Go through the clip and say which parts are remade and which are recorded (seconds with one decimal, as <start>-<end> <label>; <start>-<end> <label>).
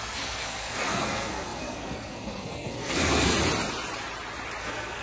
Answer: 0.0-3.3 remade; 3.3-4.6 recorded; 4.6-5.0 remade